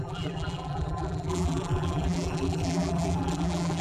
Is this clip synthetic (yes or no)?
yes